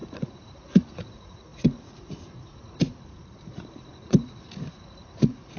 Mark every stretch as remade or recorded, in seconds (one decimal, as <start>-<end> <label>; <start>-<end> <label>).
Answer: 0.0-5.6 remade